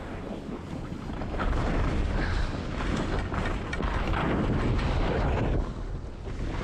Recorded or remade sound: recorded